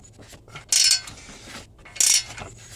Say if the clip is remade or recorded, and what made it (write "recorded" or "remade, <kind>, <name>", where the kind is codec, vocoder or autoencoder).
recorded